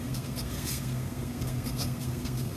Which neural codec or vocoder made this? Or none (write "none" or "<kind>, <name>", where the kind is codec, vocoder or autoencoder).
codec, SNAC